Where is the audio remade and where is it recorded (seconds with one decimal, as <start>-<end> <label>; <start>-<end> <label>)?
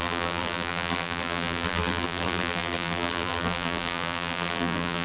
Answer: 0.0-5.0 remade